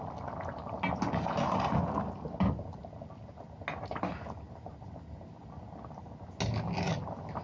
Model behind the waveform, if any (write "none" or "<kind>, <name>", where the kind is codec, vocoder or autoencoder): none